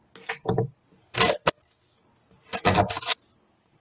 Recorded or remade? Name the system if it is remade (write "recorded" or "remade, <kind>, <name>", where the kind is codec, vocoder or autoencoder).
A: recorded